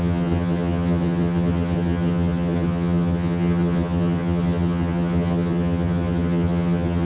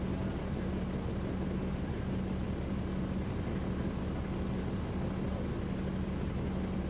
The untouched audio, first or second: second